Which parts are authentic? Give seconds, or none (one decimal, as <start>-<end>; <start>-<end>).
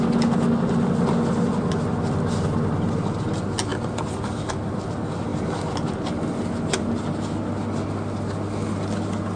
0.0-9.4